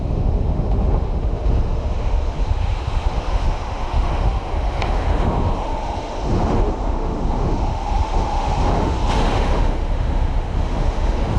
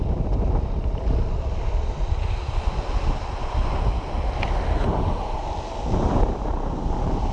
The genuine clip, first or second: second